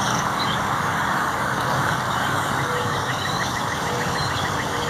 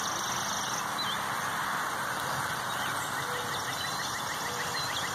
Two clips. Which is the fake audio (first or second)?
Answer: first